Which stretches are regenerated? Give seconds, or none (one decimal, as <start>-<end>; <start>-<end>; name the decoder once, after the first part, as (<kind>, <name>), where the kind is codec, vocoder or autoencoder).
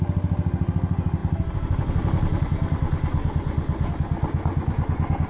none